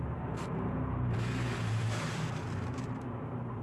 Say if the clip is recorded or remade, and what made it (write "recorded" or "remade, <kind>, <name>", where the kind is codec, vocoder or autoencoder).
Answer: remade, vocoder, BigVGAN v2